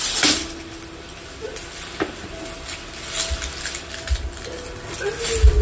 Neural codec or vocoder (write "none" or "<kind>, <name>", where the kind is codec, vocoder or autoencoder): none